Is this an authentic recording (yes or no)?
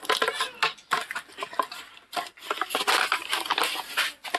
yes